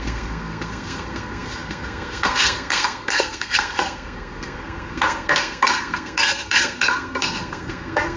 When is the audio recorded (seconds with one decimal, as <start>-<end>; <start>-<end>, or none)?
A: none